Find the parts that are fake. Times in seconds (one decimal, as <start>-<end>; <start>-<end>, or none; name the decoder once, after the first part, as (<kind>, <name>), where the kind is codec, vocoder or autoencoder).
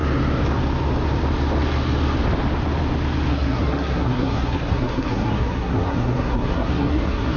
3.3-7.4 (codec, SNAC)